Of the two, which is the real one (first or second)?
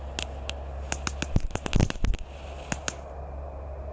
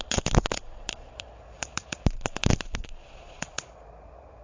first